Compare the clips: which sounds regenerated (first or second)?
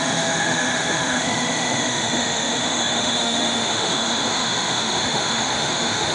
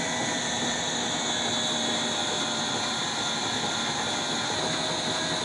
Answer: first